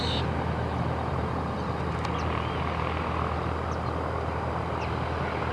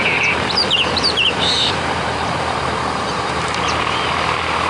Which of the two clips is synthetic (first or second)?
second